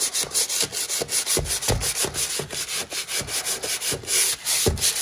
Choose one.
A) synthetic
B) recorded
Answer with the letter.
B